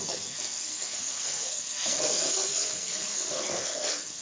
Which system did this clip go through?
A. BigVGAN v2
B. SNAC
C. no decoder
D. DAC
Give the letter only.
B